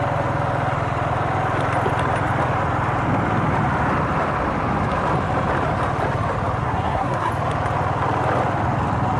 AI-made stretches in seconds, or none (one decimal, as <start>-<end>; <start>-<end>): 6.6-7.3

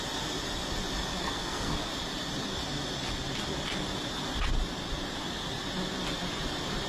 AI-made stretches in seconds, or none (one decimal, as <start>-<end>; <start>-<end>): 1.2-1.9

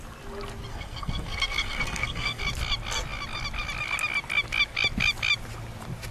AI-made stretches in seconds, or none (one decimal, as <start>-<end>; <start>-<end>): 0.7-2.4